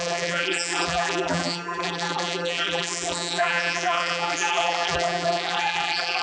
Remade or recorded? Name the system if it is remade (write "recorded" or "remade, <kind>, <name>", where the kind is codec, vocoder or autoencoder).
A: remade, vocoder, BigVGAN v2